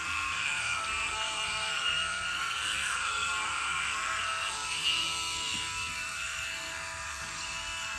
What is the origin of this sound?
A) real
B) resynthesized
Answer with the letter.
B